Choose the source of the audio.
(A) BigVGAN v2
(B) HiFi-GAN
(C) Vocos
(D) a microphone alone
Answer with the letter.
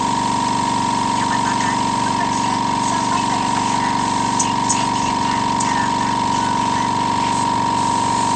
D